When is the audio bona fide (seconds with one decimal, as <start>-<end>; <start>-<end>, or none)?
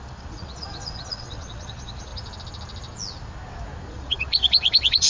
2.1-3.9